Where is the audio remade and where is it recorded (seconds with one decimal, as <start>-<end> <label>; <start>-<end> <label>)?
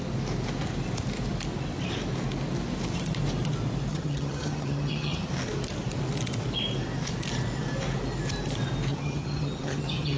0.0-3.9 recorded; 3.9-5.3 remade; 5.3-8.9 recorded; 8.9-10.2 remade